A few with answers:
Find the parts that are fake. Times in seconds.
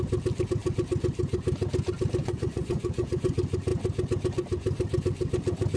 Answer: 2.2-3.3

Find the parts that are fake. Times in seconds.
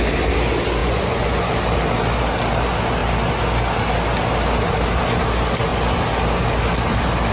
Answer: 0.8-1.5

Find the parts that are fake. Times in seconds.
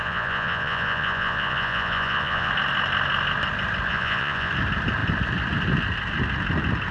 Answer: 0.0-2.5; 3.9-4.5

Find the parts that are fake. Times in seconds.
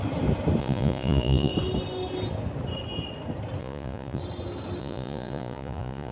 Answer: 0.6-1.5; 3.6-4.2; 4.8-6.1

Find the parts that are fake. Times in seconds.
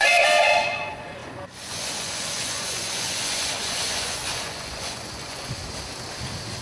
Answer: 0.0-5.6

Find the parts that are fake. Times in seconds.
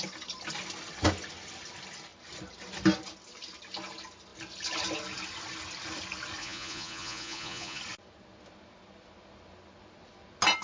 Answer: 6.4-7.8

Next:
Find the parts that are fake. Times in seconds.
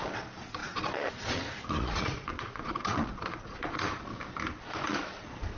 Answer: 0.0-4.1; 4.7-5.6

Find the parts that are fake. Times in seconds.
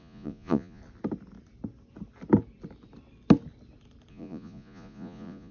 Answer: 0.0-0.8; 4.1-5.5